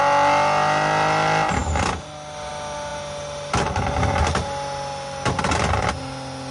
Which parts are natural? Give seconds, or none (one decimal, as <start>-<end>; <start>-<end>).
0.0-6.5